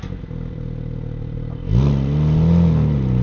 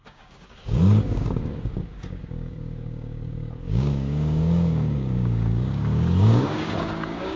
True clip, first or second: first